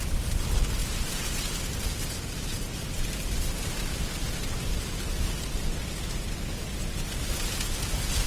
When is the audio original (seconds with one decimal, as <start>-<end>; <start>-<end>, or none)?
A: 0.0-3.9; 4.5-8.3